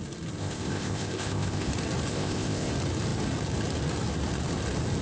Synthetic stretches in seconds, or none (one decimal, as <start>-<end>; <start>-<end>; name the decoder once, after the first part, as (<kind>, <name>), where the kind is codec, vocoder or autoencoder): 0.4-1.7 (codec, ZipCodec); 2.1-2.7